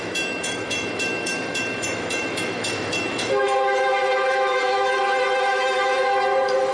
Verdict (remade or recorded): remade